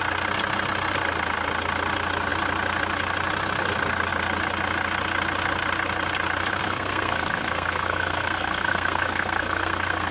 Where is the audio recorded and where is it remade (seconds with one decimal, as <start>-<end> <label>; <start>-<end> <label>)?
0.0-6.6 recorded; 6.6-10.1 remade

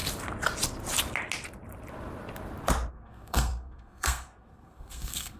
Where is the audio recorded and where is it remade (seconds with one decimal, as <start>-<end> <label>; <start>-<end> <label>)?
0.0-2.9 recorded; 2.9-5.4 remade

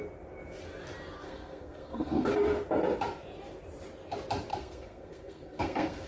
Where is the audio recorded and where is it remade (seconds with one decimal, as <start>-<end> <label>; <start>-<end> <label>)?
0.0-1.2 recorded; 1.2-2.3 remade; 2.3-4.5 recorded; 4.5-6.1 remade

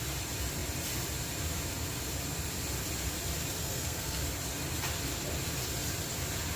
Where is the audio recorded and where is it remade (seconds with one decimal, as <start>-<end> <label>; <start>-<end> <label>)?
0.0-3.6 recorded; 3.6-4.2 remade; 4.2-6.6 recorded

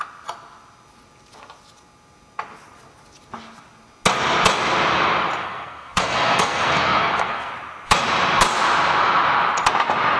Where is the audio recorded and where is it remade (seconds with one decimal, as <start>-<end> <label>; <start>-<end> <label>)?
0.0-5.4 recorded; 5.4-7.5 remade; 7.5-10.2 recorded

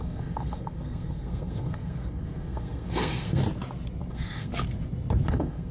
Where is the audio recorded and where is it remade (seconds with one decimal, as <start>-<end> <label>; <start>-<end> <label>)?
0.0-3.4 remade; 3.4-4.1 recorded; 4.1-4.5 remade; 4.5-5.3 recorded; 5.3-5.7 remade

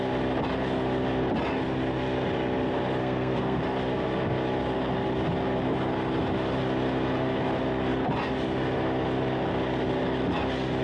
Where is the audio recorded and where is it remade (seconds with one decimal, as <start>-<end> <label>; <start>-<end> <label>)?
0.0-3.0 recorded; 3.0-3.6 remade; 3.6-10.8 recorded

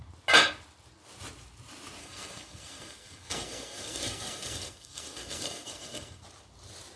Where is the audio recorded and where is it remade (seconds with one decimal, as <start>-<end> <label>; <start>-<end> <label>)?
0.0-2.0 recorded; 2.0-6.2 remade; 6.2-7.0 recorded